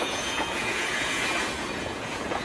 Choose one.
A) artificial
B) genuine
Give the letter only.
A